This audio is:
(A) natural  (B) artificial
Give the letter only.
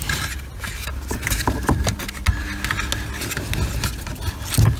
A